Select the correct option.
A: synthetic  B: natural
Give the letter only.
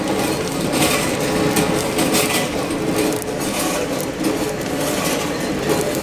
B